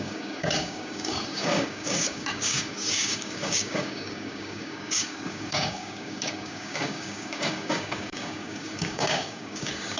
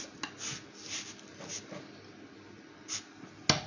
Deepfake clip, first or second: first